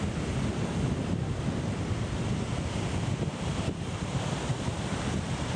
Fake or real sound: real